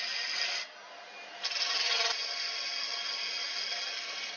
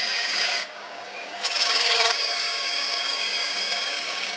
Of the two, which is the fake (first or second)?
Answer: second